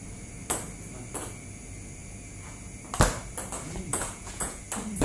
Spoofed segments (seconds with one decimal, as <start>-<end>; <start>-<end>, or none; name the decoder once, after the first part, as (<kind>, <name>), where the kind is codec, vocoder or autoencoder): 3.9-4.6 (vocoder, Vocos)